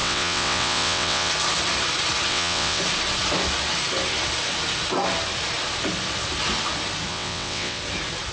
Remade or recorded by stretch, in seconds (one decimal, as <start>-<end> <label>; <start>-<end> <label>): 0.0-1.3 remade; 1.3-2.3 recorded; 2.3-2.8 remade; 2.8-7.1 recorded; 7.1-7.8 remade; 7.8-8.3 recorded